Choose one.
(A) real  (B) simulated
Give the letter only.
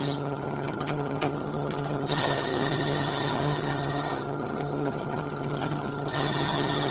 B